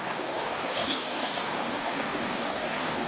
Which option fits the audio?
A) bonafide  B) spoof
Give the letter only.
B